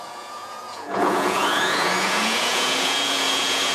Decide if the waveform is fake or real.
fake